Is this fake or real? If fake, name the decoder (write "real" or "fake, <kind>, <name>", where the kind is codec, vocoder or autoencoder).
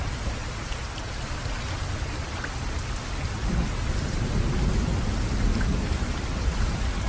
real